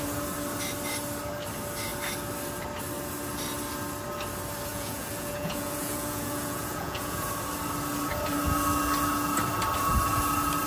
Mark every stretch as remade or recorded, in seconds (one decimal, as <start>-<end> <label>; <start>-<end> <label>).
0.0-4.7 recorded; 4.7-7.3 remade; 7.3-10.7 recorded